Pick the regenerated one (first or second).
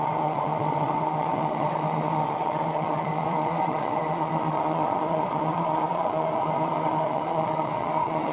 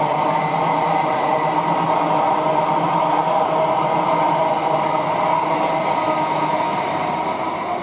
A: first